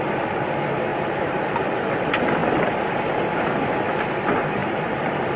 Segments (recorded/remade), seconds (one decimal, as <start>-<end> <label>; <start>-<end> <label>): 0.0-0.9 recorded; 0.9-1.6 remade; 1.6-2.4 recorded; 2.4-3.8 remade; 3.8-4.6 recorded; 4.6-5.4 remade